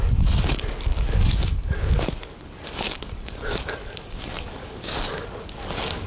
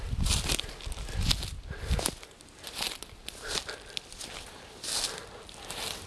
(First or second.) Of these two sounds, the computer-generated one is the first